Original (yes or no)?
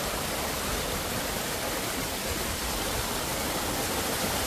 yes